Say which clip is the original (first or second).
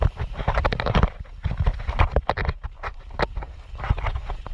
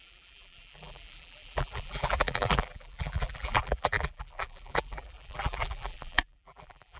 first